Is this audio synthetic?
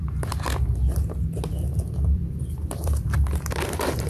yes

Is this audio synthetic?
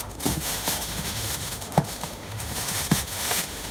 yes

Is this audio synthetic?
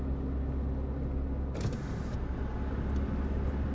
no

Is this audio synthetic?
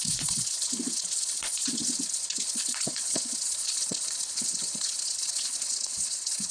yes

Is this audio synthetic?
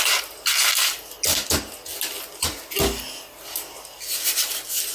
no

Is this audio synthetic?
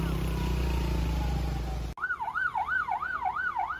no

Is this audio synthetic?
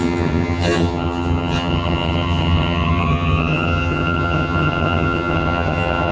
yes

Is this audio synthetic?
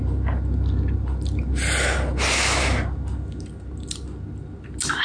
no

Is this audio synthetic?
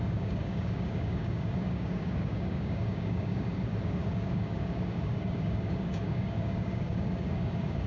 yes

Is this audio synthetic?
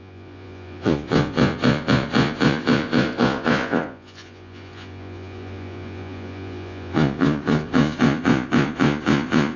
yes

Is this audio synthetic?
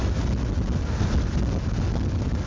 no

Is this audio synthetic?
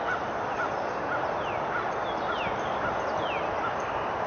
no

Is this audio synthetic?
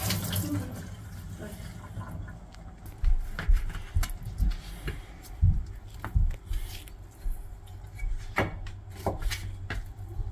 no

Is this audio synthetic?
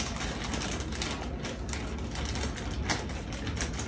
no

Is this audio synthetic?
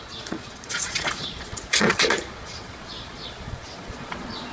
yes